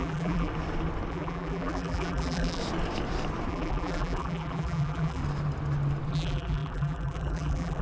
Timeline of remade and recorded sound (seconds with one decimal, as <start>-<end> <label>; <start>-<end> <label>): 0.0-0.5 remade; 0.5-1.1 recorded; 1.1-2.6 remade; 2.6-3.5 recorded; 3.5-5.2 remade; 5.2-6.1 recorded; 6.1-7.8 remade